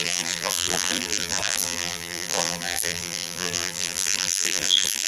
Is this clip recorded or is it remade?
remade